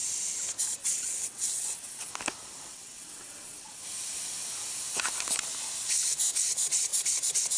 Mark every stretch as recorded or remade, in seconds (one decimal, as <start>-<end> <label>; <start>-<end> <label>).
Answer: 0.0-0.8 recorded; 0.8-2.1 remade; 2.1-2.7 recorded; 2.7-3.8 remade; 3.8-7.6 recorded